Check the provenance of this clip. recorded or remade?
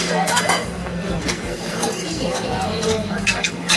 remade